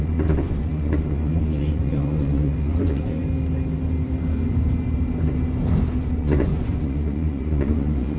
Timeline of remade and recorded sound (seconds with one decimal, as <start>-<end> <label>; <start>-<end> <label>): 0.0-3.2 remade; 3.2-6.0 recorded; 6.0-8.2 remade